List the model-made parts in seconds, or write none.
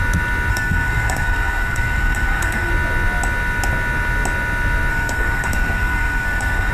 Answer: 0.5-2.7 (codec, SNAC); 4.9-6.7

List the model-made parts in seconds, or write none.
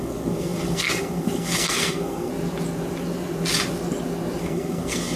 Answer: 0.0-2.3 (codec, SNAC); 4.4-5.2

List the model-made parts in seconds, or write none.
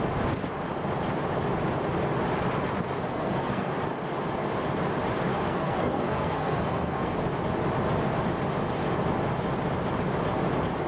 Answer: 3.1-3.7 (codec, SNAC); 5.3-7.1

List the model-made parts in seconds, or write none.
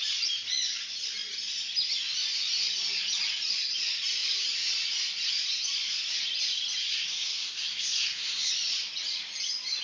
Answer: 6.9-8.5 (codec, SNAC)